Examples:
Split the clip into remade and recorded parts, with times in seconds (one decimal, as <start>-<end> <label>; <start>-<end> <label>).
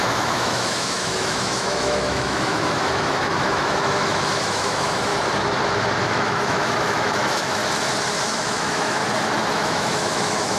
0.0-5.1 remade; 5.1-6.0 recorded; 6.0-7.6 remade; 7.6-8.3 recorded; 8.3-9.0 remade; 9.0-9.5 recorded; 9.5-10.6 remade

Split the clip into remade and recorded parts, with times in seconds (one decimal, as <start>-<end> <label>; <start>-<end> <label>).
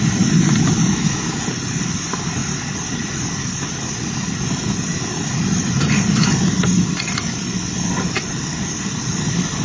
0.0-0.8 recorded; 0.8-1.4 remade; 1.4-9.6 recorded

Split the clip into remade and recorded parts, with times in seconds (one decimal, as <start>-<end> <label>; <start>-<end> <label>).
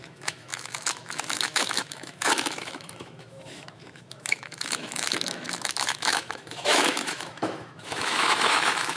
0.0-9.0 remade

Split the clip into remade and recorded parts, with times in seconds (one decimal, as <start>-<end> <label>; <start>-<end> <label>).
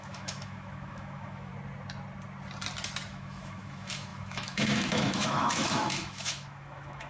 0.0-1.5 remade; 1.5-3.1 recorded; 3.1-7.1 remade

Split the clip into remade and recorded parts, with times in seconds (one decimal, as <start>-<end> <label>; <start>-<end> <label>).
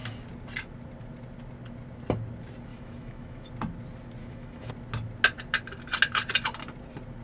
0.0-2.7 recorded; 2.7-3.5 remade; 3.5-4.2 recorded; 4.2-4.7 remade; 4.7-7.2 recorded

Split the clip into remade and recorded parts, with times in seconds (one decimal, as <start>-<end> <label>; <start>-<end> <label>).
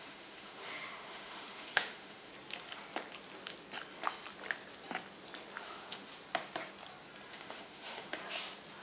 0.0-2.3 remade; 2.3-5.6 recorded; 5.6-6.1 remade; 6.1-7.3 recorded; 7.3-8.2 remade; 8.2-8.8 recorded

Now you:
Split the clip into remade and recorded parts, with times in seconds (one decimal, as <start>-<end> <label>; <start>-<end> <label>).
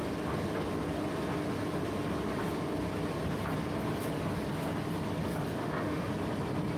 0.0-5.6 recorded; 5.6-6.1 remade; 6.1-6.8 recorded